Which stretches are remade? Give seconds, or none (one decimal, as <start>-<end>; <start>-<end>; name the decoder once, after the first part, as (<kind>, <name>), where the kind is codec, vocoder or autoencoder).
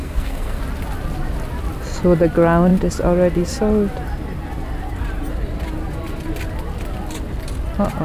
0.0-0.6 (codec, SNAC)